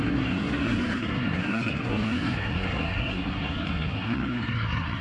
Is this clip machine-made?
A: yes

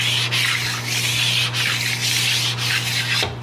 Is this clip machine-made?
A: no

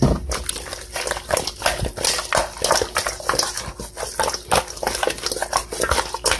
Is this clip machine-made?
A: no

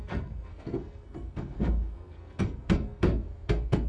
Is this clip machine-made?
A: yes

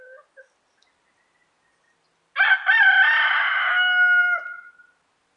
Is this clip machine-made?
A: no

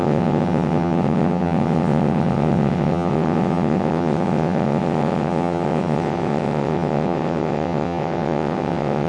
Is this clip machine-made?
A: yes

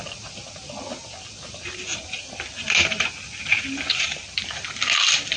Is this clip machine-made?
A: no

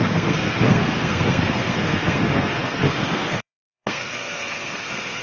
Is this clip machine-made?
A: yes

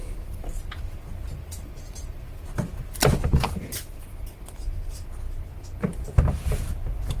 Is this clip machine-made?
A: no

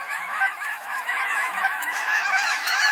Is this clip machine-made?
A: yes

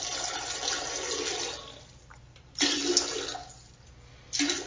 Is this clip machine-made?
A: no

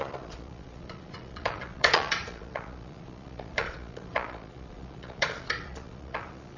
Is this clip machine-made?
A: yes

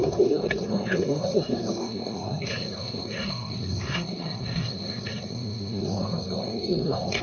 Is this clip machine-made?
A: yes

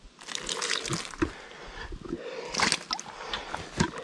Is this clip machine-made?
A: no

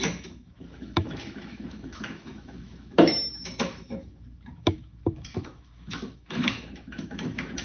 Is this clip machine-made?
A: yes